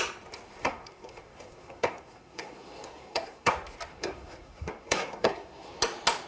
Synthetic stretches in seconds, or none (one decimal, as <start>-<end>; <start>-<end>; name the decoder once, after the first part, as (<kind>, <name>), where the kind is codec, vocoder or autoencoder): 0.6-3.5 (codec, SNAC); 3.9-5.8